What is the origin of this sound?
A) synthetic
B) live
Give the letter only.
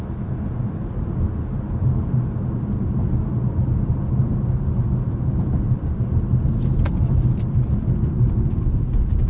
B